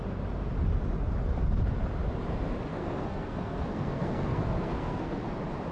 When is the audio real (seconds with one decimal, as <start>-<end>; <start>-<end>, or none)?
0.0-2.7; 5.2-5.7